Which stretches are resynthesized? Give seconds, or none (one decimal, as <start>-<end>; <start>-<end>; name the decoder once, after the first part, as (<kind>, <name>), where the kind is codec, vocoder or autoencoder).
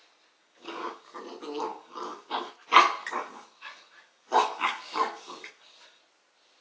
0.4-1.2 (codec, DAC); 1.7-2.5; 3.0-6.0